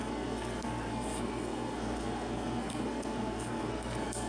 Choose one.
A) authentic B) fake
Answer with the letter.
B